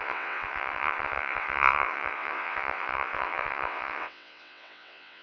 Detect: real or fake fake